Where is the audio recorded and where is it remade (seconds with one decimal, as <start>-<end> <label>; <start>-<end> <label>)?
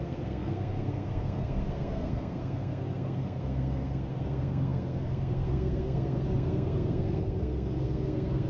0.0-8.5 remade